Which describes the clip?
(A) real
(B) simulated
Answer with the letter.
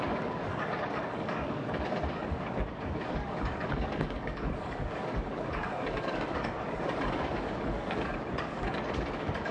B